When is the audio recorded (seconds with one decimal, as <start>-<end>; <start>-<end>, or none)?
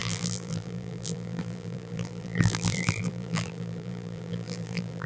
none